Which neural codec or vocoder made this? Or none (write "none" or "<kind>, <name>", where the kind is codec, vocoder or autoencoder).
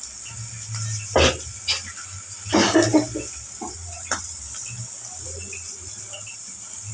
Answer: none